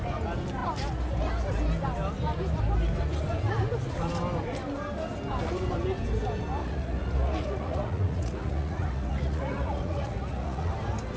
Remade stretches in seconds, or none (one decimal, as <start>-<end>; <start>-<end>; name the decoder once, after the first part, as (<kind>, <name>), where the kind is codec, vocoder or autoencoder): 6.6-10.7 (vocoder, Vocos)